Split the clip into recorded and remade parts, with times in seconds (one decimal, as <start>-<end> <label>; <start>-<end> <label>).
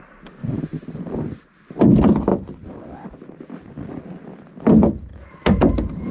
0.0-0.4 recorded; 0.4-1.7 remade; 1.7-6.1 recorded